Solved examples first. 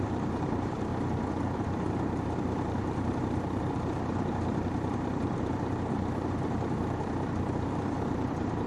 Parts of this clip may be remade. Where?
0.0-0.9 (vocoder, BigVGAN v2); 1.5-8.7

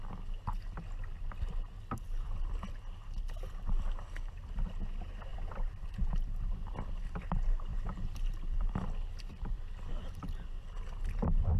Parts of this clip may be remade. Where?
5.3-7.3 (vocoder, BigVGAN v2); 7.7-8.7; 9.3-9.9